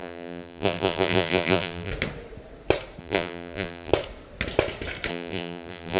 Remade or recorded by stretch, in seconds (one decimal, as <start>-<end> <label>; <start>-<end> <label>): 0.0-1.9 remade; 1.9-3.0 recorded; 3.0-3.9 remade; 3.9-5.1 recorded; 5.1-6.0 remade